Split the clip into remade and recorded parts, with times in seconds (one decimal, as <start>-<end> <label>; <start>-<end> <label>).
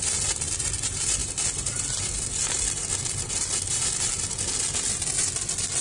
0.0-5.8 recorded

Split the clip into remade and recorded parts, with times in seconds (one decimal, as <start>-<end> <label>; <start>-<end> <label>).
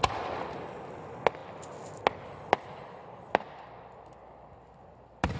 0.0-5.4 recorded